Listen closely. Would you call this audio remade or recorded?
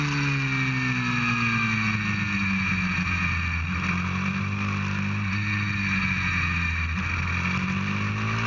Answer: recorded